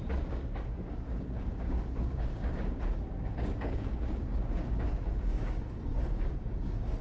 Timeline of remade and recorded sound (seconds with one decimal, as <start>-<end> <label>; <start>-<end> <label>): 0.0-7.0 remade